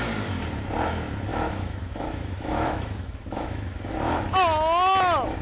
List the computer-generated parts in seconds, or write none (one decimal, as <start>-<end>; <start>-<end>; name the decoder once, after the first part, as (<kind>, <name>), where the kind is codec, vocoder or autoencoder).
1.3-3.9 (autoencoder, DAC-VAE)